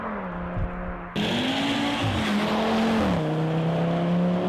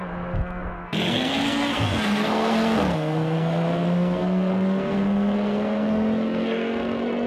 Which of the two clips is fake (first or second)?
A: second